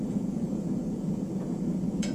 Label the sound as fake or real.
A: fake